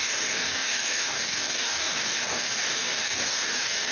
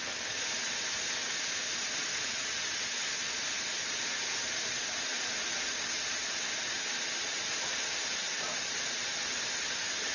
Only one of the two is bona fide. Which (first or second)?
second